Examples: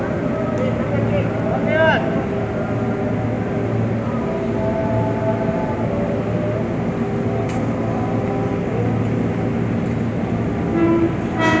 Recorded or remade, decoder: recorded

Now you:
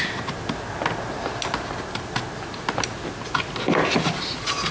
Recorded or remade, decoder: recorded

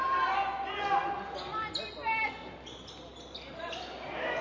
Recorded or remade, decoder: recorded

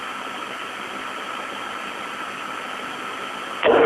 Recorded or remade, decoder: recorded